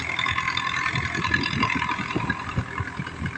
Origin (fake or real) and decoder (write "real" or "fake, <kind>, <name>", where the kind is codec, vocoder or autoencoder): real